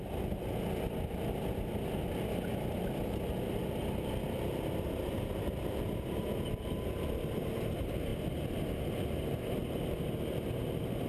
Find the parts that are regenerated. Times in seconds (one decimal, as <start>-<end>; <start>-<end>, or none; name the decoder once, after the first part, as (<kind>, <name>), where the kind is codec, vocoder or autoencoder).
none